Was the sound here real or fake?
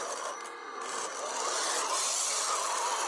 real